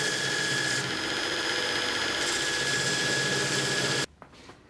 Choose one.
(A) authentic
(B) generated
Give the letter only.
A